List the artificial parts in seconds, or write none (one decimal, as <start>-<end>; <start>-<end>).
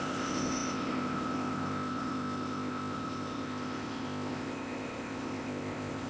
0.0-6.1